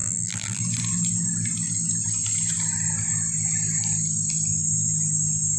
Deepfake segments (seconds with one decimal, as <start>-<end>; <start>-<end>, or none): 0.0-0.6